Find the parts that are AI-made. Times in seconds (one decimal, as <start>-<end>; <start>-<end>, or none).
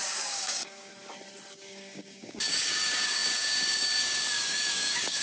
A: 0.0-0.9; 1.5-5.2